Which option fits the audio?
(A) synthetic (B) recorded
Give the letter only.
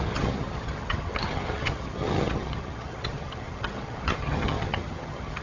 A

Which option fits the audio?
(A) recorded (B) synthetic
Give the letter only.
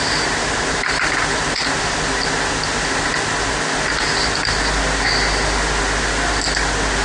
A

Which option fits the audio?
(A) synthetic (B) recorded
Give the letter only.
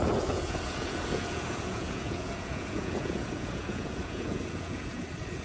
A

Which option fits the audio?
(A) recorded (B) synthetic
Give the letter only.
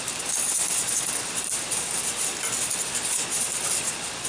A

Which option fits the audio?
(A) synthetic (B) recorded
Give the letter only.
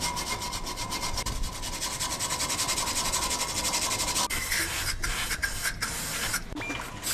B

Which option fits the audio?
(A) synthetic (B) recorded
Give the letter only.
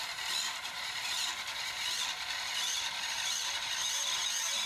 A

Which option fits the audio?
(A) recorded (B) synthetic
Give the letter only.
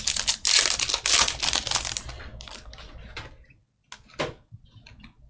A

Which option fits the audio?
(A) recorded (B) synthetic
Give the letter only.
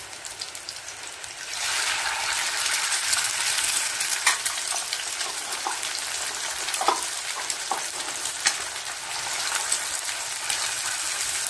A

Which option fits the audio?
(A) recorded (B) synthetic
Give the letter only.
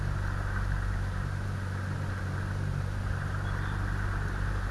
A